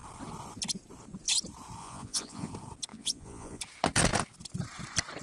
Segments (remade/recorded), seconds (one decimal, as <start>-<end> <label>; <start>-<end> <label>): 0.0-1.8 recorded; 1.8-2.5 remade; 2.5-2.9 recorded; 2.9-3.6 remade; 3.6-5.2 recorded